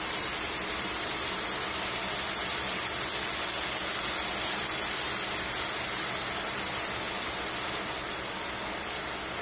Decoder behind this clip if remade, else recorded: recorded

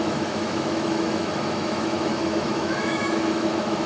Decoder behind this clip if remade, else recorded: remade, autoencoder, DAC-VAE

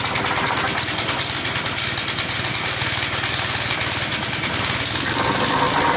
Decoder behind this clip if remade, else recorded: recorded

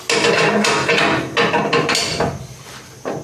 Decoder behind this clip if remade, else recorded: recorded